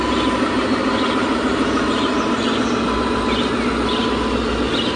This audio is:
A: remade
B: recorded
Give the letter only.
A